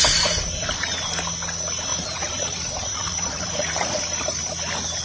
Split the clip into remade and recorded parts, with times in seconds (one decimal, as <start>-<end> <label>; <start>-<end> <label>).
0.0-1.9 recorded; 1.9-4.0 remade; 4.0-5.0 recorded